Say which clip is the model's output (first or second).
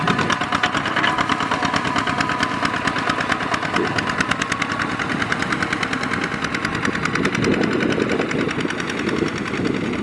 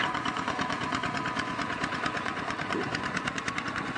second